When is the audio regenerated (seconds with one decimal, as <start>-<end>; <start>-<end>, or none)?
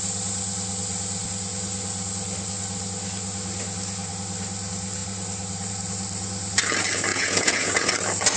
7.1-7.9